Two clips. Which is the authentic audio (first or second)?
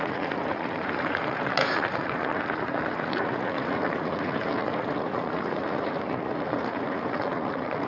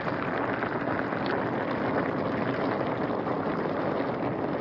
second